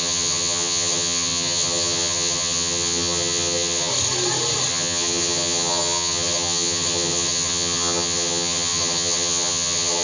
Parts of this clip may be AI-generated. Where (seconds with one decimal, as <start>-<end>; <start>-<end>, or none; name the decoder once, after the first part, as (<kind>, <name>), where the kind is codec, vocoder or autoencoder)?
0.0-3.9 (vocoder, HiFi-GAN); 4.7-10.0